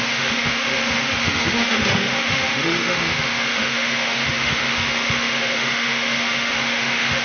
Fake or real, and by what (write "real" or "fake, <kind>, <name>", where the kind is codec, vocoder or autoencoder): fake, autoencoder, DAC-VAE